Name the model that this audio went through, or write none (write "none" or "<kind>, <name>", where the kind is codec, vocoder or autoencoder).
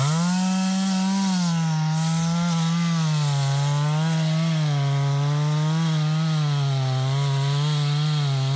none